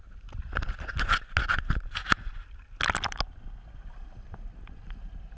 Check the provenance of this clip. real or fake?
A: real